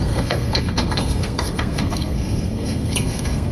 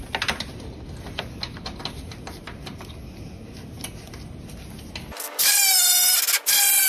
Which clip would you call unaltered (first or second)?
second